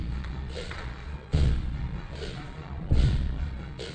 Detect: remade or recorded remade